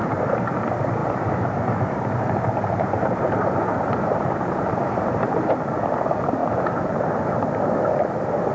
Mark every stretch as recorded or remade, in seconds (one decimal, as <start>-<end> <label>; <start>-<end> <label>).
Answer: 0.0-0.5 remade; 0.5-1.0 recorded; 1.0-5.5 remade; 5.5-6.4 recorded; 6.4-7.1 remade; 7.1-8.5 recorded